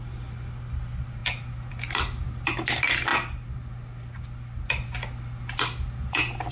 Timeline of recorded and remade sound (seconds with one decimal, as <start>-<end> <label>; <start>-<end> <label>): 0.0-6.5 recorded